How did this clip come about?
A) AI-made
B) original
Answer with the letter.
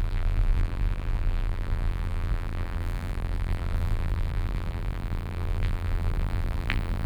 A